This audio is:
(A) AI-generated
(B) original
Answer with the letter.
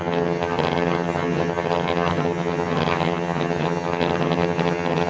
A